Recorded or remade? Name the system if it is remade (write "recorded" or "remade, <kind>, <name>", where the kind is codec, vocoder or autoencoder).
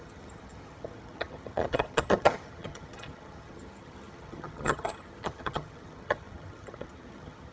remade, vocoder, HiFi-GAN